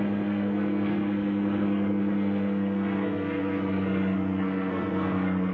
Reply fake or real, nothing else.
fake